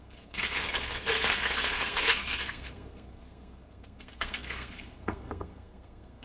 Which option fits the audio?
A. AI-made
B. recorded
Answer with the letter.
A